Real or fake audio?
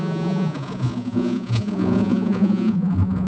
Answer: fake